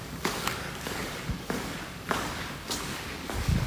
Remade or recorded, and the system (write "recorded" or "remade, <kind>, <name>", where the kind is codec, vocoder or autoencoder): remade, codec, DAC